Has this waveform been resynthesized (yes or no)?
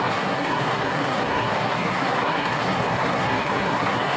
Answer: yes